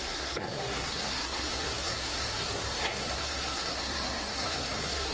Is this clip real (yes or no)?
no